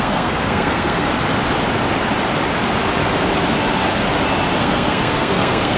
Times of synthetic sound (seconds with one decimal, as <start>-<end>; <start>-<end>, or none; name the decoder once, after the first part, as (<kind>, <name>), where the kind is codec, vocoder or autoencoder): 0.0-1.1 (codec, SNAC); 4.6-5.8